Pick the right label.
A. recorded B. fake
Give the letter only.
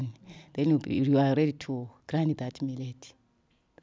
A